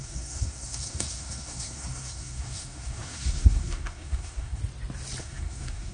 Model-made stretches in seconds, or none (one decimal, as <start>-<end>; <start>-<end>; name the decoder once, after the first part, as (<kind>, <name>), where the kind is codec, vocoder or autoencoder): 0.0-4.6 (codec, SNAC); 5.2-5.9